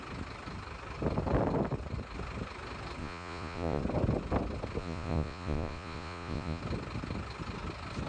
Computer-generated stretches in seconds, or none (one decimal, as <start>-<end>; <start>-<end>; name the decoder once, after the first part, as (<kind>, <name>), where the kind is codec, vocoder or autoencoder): 3.0-3.8 (vocoder, Vocos); 4.8-6.6